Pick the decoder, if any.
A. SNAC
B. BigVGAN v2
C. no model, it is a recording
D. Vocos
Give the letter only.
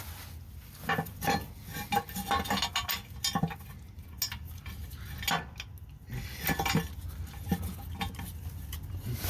C